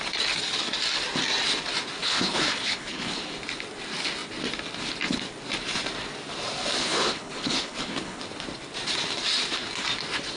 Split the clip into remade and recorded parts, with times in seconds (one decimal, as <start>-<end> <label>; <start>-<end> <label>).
0.0-2.0 recorded; 2.0-3.2 remade; 3.2-6.8 recorded; 6.8-8.2 remade; 8.2-10.4 recorded